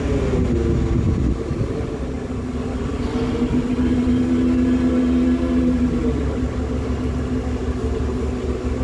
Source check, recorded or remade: recorded